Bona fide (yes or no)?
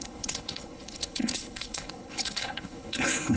no